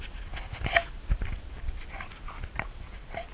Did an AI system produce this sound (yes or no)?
no